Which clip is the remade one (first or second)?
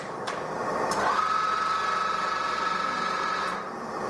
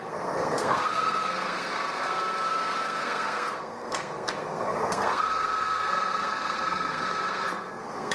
second